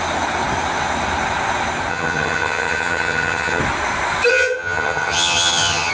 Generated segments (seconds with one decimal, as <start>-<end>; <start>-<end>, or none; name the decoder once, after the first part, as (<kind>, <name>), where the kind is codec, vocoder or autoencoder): 1.9-3.6 (vocoder, HiFi-GAN); 4.3-5.9